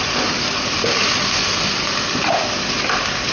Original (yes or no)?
yes